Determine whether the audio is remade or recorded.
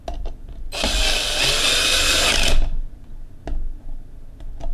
recorded